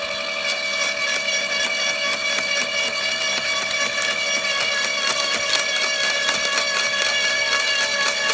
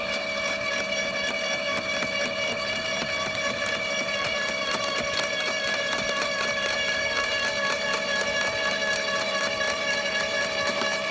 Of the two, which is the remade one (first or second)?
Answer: second